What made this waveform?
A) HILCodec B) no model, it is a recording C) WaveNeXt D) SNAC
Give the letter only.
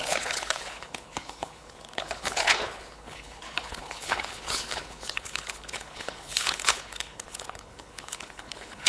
A